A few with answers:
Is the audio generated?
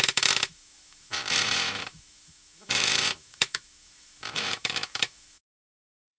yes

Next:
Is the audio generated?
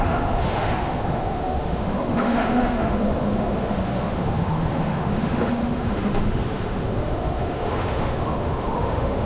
yes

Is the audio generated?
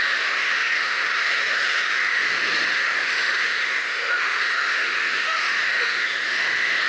yes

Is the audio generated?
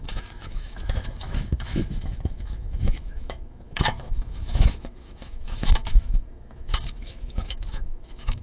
yes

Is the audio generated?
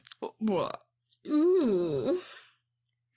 no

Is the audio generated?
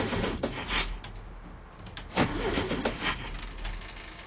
no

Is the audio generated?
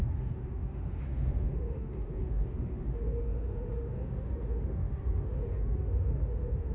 yes